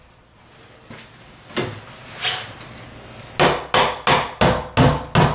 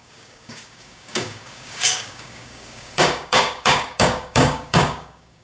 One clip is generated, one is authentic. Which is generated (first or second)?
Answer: second